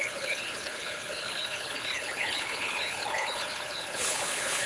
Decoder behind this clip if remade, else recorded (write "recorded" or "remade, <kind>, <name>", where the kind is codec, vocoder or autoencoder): remade, codec, HILCodec